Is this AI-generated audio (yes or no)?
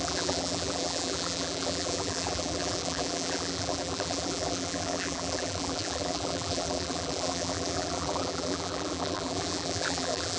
yes